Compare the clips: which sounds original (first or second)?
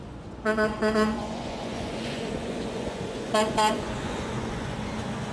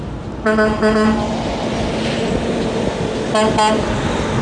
second